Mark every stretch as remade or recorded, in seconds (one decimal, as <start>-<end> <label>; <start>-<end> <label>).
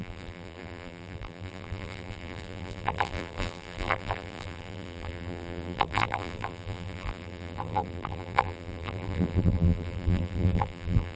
0.0-11.2 remade